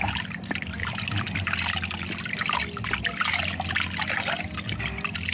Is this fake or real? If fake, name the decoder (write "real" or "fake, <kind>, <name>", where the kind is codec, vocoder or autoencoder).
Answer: real